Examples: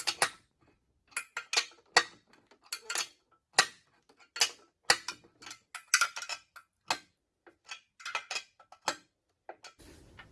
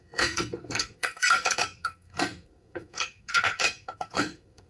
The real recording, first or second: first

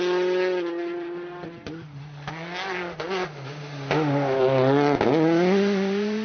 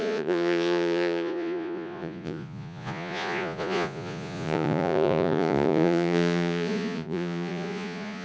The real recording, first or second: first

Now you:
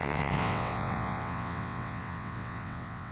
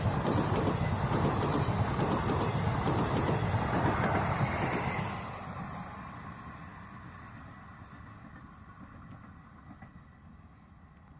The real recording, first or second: second